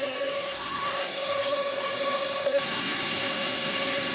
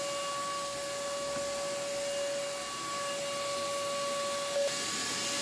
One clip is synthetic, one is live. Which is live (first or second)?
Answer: second